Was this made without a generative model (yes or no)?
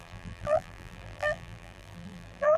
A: no